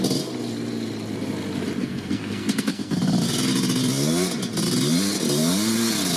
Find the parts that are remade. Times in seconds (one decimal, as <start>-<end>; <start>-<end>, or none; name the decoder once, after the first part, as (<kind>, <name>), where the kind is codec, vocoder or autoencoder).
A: 1.8-3.0 (codec, SNAC)